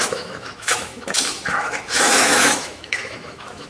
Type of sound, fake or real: fake